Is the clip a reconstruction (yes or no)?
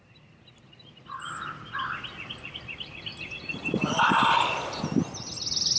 no